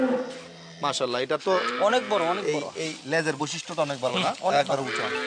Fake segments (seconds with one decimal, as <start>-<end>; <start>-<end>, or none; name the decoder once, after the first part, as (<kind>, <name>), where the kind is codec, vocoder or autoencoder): 4.1-4.7 (codec, HILCodec)